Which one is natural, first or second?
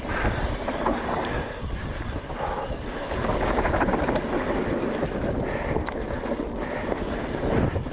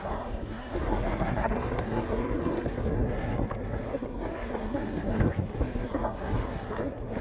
first